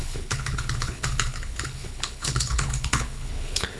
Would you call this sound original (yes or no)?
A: no